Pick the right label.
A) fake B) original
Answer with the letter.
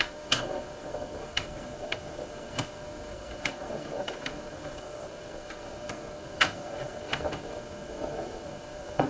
A